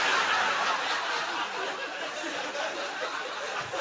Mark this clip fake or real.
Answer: real